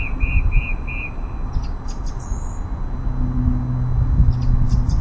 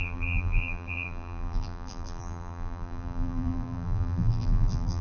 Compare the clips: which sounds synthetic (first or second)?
second